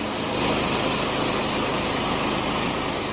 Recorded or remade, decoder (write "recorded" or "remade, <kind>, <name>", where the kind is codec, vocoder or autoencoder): recorded